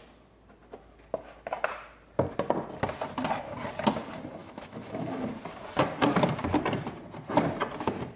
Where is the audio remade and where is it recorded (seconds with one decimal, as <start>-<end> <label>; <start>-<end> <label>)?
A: 0.0-4.4 recorded; 4.4-5.2 remade; 5.2-8.2 recorded